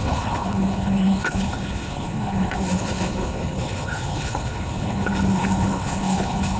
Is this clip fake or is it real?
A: fake